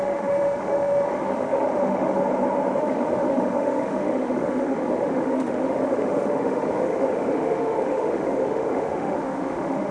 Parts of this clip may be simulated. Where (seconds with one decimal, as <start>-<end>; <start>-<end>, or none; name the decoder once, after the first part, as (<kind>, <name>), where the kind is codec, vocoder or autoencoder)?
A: 0.0-2.2 (autoencoder, DAC-VAE); 2.8-9.9